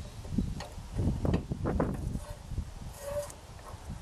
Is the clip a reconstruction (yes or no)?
no